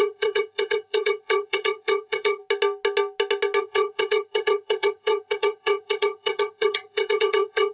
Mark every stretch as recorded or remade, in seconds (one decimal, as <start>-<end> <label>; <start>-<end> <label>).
0.0-2.4 remade; 2.4-3.6 recorded; 3.6-7.7 remade